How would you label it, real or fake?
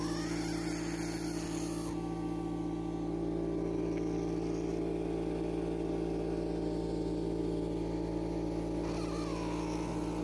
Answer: real